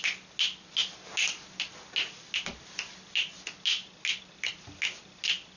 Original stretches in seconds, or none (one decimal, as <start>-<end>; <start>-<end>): 0.0-5.6